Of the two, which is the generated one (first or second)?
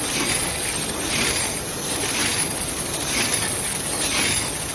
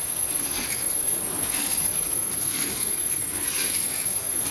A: second